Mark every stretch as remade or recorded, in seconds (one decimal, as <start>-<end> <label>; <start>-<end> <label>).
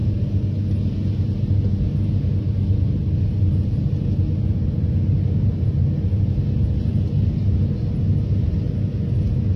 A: 0.0-9.6 recorded